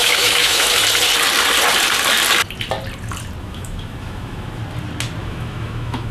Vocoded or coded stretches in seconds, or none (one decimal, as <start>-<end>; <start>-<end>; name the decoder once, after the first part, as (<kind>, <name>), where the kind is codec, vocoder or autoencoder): 0.0-0.8 (autoencoder, DAC-VAE); 3.4-4.6; 5.2-6.1